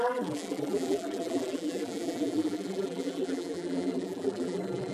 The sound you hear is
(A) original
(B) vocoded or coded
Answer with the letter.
B